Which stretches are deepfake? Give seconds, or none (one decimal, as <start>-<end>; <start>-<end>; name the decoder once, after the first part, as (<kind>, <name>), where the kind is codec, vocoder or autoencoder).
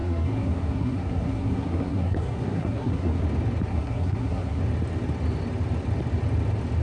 0.0-3.2 (codec, SNAC); 3.7-4.6